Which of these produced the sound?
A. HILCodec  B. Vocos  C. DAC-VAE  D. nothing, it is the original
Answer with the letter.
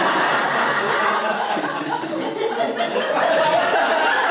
D